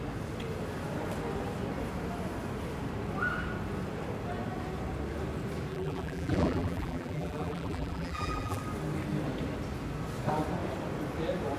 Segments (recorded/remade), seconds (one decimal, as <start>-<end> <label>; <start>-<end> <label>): 0.0-5.7 recorded; 5.7-8.6 remade; 8.6-11.6 recorded